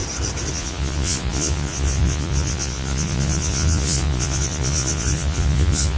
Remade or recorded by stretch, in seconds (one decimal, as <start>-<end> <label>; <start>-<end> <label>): 0.0-0.5 recorded; 0.5-6.0 remade